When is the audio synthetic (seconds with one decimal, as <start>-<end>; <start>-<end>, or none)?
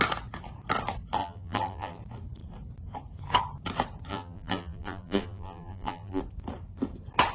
1.2-2.0; 4.1-6.2